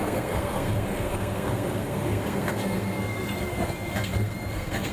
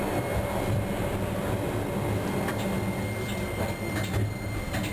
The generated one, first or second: first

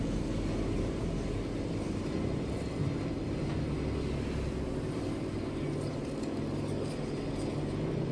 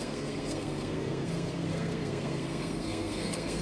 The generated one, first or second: second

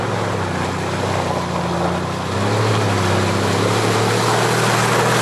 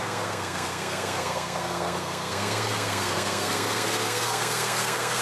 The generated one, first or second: second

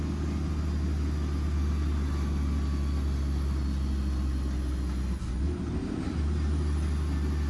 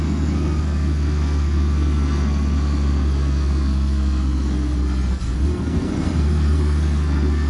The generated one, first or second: second